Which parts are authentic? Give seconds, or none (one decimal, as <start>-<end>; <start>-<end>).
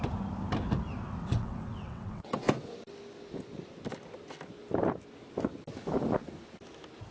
0.0-1.2; 2.7-7.1